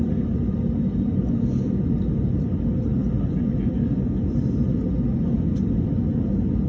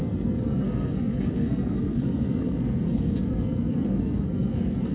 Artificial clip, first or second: second